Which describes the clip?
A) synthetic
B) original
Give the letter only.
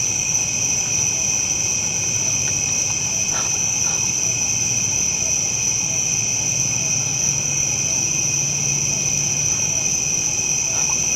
B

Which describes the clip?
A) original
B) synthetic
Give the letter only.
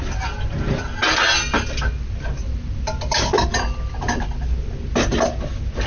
A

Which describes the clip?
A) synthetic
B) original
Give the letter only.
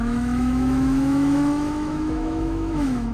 A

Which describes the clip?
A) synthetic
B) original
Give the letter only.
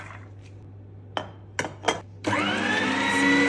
B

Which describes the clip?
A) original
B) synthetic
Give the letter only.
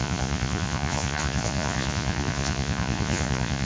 B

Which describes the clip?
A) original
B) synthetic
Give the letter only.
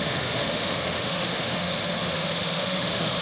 B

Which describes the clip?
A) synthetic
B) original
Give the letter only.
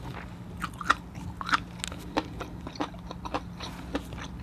B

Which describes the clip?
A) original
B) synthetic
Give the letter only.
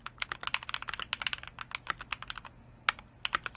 A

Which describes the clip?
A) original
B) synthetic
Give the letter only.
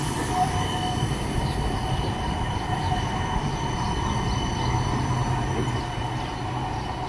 A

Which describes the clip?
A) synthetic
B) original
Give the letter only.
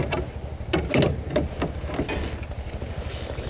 B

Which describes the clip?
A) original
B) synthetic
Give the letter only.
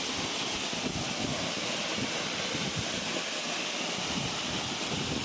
A